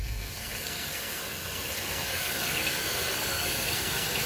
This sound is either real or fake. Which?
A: fake